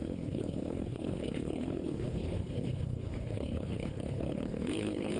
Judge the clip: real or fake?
fake